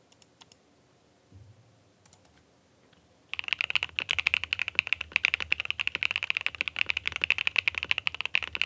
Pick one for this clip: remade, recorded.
recorded